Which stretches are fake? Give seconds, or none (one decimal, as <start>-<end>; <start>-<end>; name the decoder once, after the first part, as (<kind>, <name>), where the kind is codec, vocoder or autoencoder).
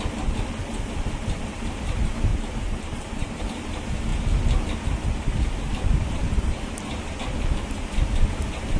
2.3-3.4 (vocoder, BigVGAN v2)